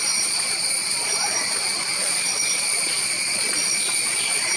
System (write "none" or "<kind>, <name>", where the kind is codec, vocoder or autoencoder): vocoder, Vocos